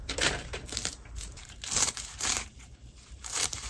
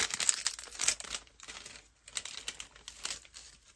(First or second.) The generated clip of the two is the first